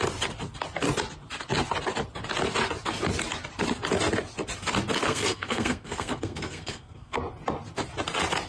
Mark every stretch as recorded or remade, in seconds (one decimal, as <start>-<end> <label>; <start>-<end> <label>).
0.0-5.1 recorded; 5.1-7.2 remade; 7.2-8.5 recorded